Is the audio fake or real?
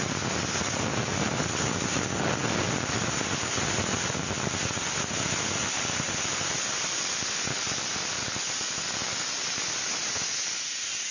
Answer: real